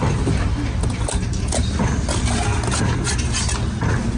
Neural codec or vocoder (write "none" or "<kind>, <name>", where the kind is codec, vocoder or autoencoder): none